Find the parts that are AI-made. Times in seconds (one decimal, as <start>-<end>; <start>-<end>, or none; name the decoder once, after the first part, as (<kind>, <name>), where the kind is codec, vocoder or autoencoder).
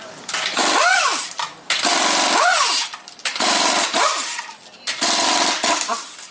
0.9-1.8 (vocoder, BigVGAN v2); 2.5-4.4